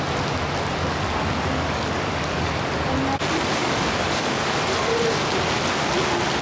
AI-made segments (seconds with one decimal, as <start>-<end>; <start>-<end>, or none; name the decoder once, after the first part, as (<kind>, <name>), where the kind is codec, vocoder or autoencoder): 0.8-2.6 (codec, DAC); 3.6-4.5